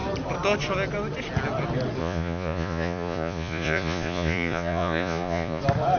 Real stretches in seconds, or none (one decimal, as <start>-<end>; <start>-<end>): 0.0-2.0; 5.6-6.0